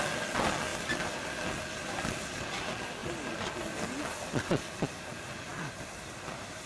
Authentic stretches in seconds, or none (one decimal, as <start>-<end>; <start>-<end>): 0.0-0.7; 2.6-3.0; 4.0-5.5